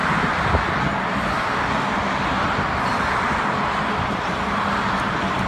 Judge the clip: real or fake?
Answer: real